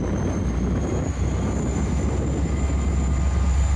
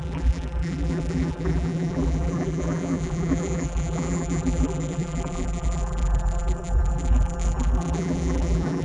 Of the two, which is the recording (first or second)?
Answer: first